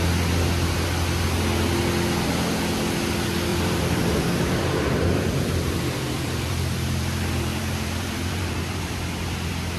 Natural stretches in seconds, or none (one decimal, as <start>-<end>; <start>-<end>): 0.0-3.5; 8.8-9.8